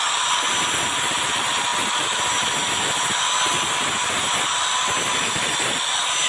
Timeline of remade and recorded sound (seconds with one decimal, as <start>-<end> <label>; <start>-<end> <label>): 0.0-6.3 recorded